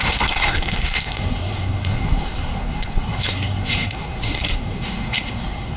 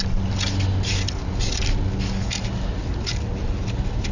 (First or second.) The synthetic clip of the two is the first